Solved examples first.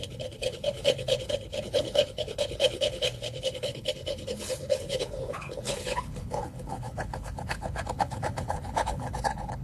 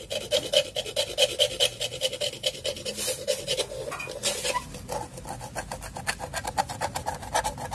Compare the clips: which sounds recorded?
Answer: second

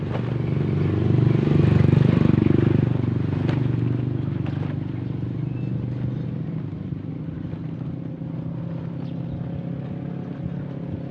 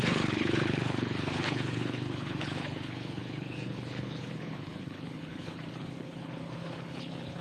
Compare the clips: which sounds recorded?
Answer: first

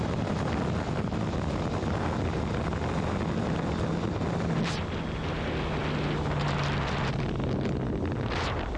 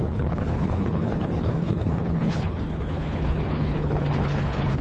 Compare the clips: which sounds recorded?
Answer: first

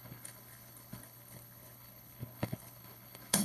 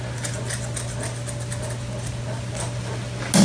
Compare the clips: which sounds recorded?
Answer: second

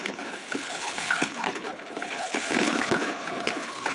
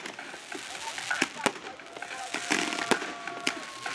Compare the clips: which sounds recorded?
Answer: second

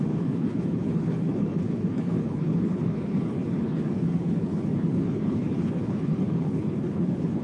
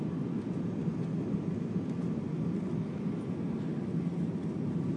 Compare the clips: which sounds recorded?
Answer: second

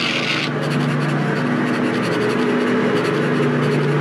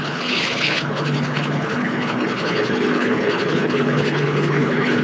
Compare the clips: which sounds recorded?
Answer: first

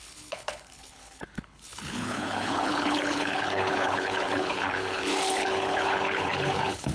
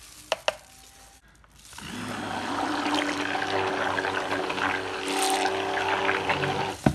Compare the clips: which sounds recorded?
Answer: second